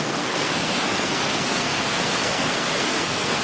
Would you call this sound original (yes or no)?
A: no